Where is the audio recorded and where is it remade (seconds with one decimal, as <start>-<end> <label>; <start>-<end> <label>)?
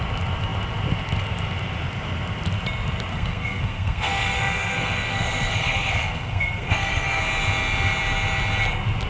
0.0-3.1 recorded; 3.1-7.2 remade; 7.2-9.1 recorded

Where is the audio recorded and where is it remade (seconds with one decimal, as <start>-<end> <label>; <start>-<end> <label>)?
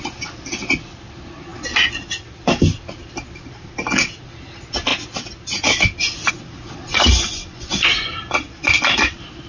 0.0-6.9 recorded; 6.9-8.1 remade; 8.1-9.5 recorded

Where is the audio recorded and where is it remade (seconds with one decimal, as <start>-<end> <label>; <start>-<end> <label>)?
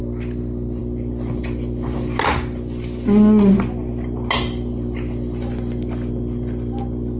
0.0-7.2 recorded